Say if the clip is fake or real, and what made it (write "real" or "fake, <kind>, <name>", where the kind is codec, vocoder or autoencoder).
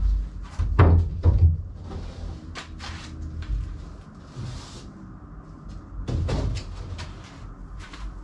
real